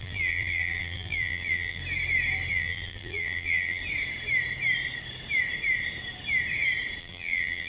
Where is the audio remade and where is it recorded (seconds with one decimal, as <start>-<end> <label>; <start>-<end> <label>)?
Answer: 0.0-1.8 remade; 1.8-2.5 recorded; 2.5-3.8 remade; 3.8-7.0 recorded; 7.0-7.7 remade